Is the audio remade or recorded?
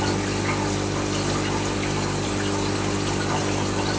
recorded